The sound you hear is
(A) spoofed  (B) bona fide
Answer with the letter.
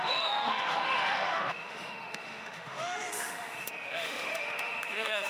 A